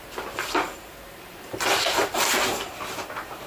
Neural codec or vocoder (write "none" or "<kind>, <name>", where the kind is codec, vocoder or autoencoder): vocoder, BigVGAN v2